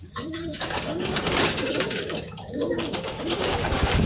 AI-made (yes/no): yes